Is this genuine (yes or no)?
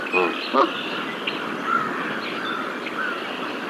yes